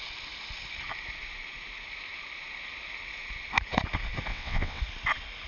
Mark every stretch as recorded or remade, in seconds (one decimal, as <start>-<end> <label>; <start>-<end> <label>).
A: 0.0-4.3 recorded; 4.3-4.8 remade; 4.8-5.5 recorded